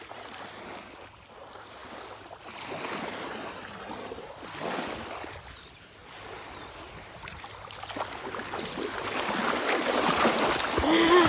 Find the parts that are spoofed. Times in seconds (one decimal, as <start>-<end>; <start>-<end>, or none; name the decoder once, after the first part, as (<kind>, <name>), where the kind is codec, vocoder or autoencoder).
none